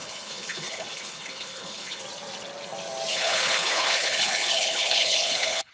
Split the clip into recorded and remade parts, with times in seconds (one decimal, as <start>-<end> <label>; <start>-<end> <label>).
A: 0.0-2.0 remade; 2.0-3.1 recorded; 3.1-5.7 remade